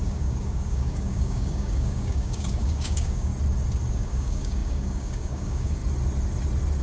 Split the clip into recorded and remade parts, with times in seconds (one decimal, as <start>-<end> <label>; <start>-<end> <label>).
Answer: 0.0-3.3 remade; 3.3-3.9 recorded; 3.9-5.8 remade; 5.8-6.8 recorded